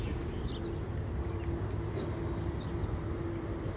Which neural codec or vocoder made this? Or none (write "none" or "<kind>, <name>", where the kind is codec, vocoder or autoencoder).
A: none